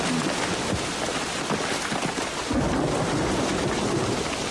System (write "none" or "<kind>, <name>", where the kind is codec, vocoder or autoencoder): none